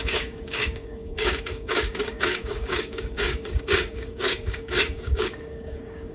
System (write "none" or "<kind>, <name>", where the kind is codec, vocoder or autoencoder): codec, DAC